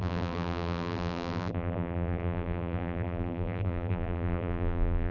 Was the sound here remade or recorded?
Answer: remade